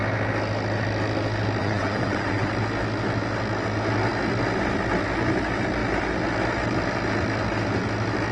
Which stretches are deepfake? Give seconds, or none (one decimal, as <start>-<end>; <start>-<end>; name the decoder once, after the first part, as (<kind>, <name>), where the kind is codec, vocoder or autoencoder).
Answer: 1.6-2.5 (vocoder, WaveNeXt)